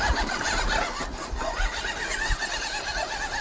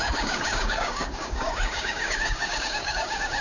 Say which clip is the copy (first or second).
second